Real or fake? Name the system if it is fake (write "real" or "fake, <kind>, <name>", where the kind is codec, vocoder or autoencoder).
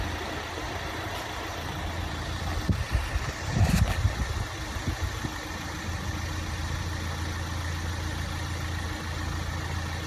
real